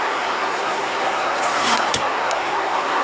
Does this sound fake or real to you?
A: fake